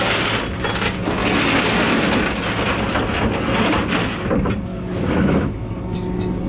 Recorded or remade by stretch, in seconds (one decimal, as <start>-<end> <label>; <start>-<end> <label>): 0.0-4.7 recorded; 4.7-5.8 remade; 5.8-6.5 recorded